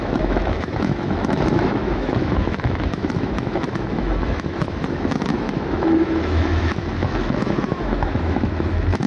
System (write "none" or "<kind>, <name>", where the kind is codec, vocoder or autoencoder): autoencoder, DAC-VAE